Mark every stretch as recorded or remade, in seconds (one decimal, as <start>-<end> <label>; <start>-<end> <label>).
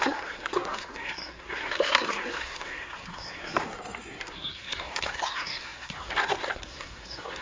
0.0-7.4 remade